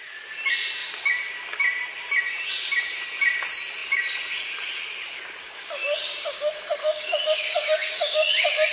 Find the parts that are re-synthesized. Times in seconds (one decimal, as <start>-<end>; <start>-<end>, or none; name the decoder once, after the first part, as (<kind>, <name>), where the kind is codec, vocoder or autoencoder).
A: 5.4-8.7 (codec, DAC)